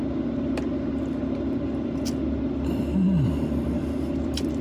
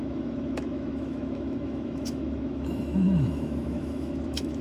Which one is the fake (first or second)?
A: second